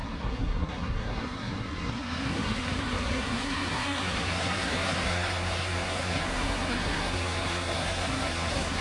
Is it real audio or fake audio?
fake